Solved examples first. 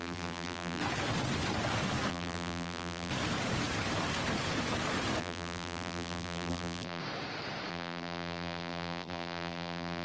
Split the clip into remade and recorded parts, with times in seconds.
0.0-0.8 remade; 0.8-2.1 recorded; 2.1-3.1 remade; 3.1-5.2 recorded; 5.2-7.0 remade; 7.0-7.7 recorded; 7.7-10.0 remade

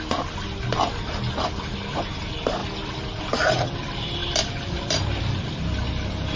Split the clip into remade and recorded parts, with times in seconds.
0.0-2.6 recorded; 2.6-3.2 remade; 3.2-4.2 recorded; 4.2-5.5 remade; 5.5-6.4 recorded

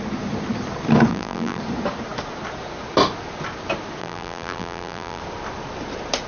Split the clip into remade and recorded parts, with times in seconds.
0.0-1.1 recorded; 1.1-1.6 remade; 1.6-4.0 recorded; 4.0-5.2 remade; 5.2-6.3 recorded

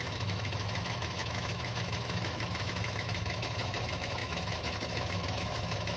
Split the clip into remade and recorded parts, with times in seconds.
0.0-6.0 remade

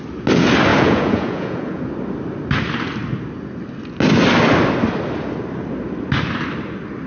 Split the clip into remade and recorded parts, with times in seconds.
0.0-0.7 recorded; 0.7-1.8 remade; 1.8-7.1 recorded

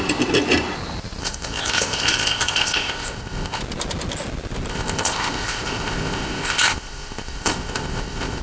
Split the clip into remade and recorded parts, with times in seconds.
0.0-1.2 recorded; 1.2-3.6 remade; 3.6-4.7 recorded; 4.7-8.4 remade

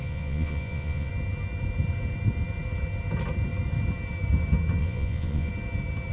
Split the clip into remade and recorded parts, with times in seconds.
0.0-1.1 remade; 1.1-4.8 recorded; 4.8-5.5 remade; 5.5-6.1 recorded